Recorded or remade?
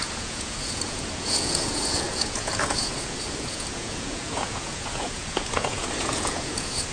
remade